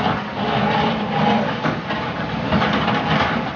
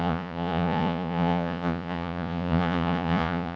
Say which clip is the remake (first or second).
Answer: second